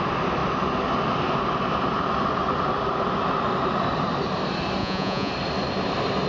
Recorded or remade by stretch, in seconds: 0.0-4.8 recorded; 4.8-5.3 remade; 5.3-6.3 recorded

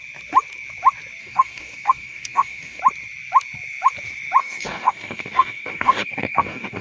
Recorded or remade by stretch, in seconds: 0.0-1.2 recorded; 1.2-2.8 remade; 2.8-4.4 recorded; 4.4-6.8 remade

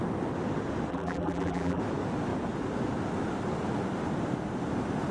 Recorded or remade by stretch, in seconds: 0.0-0.9 recorded; 0.9-1.8 remade; 1.8-5.1 recorded

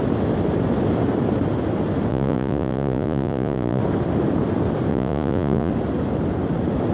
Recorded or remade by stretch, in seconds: 0.0-2.1 recorded; 2.1-3.8 remade; 3.8-4.9 recorded; 4.9-5.7 remade; 5.7-6.9 recorded

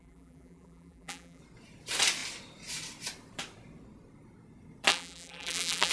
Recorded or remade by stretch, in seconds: 0.0-1.4 remade; 1.4-4.9 recorded; 4.9-5.9 remade

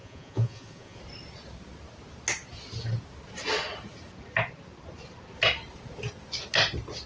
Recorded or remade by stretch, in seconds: 0.0-1.0 remade; 1.0-7.1 recorded

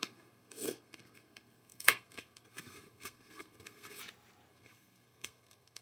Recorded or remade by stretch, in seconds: 0.0-4.0 remade; 4.0-4.5 recorded; 4.5-5.8 remade

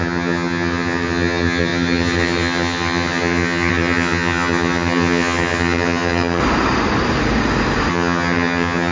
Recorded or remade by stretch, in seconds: 0.0-6.4 remade; 6.4-7.9 recorded; 7.9-8.9 remade